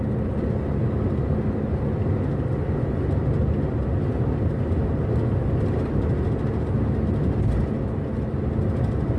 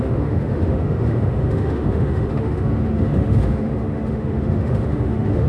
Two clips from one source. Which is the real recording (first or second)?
first